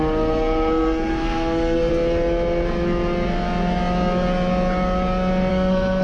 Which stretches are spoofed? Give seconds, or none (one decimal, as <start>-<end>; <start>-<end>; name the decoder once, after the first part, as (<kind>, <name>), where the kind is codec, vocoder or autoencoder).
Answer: 0.0-1.9 (codec, SNAC); 5.5-6.0